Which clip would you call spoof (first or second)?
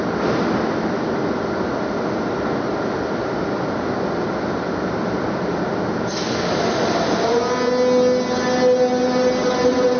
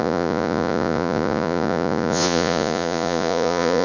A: second